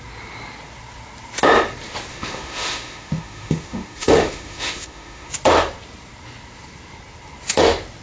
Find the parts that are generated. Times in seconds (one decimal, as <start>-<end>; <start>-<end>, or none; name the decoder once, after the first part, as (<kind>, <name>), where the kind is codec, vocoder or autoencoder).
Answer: 2.1-5.3 (autoencoder, DAC-VAE)